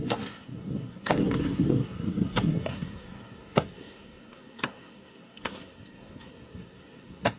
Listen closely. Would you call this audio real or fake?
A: fake